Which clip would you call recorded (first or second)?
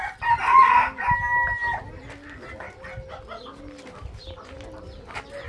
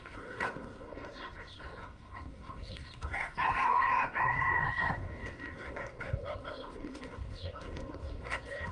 first